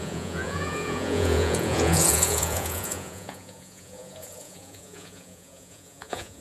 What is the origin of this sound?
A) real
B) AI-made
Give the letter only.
B